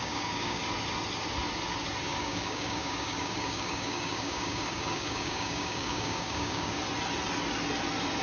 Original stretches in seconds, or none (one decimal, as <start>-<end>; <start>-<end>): 0.6-2.1; 6.8-8.2

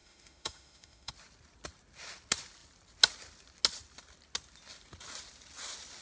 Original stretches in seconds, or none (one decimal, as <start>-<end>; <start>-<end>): 1.1-6.0

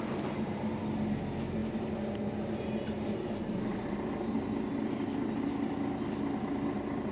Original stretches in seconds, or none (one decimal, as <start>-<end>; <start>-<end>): 0.0-7.1

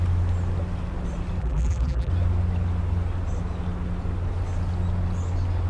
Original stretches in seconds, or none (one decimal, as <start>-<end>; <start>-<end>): 0.0-1.4; 2.1-5.7

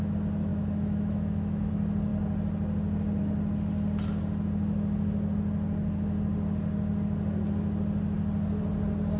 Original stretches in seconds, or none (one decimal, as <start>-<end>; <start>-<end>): 0.0-0.5; 1.7-9.2

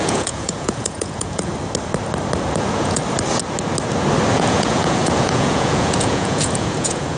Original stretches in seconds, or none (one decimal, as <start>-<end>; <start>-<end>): 1.5-2.6; 3.0-4.3

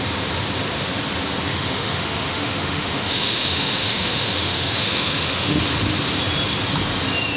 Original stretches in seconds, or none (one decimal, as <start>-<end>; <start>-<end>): 0.0-1.5; 5.6-7.4